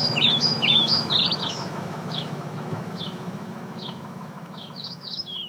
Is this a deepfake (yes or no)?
yes